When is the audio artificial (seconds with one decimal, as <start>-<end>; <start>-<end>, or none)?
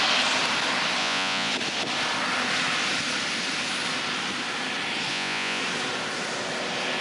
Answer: 1.0-1.5; 5.1-5.6